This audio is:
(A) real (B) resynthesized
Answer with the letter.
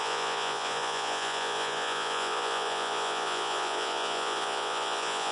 B